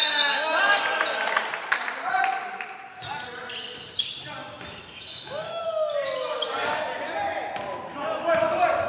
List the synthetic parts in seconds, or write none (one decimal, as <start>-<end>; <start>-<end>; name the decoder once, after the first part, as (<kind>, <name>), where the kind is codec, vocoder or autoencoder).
0.0-0.6 (autoencoder, DAC-VAE); 4.4-5.6